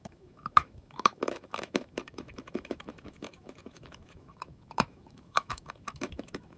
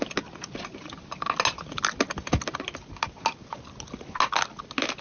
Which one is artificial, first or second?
first